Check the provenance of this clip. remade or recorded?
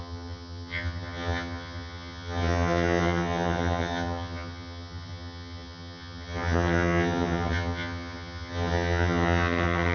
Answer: remade